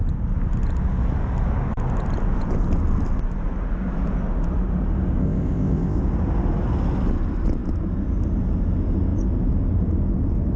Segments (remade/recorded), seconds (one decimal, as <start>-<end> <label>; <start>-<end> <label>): 0.0-5.2 recorded; 5.2-6.0 remade; 6.0-10.6 recorded